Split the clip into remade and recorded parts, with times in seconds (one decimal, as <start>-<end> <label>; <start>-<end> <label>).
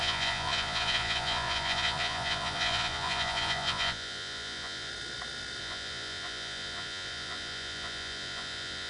0.0-4.9 remade; 4.9-5.6 recorded; 5.6-8.9 remade